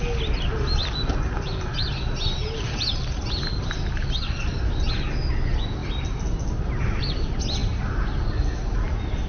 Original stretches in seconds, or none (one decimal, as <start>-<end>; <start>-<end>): 0.0-9.3